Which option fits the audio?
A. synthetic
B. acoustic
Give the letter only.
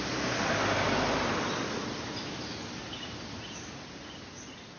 B